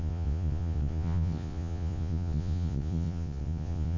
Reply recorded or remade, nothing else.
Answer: remade